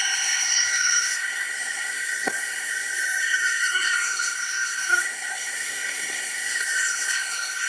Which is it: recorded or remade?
remade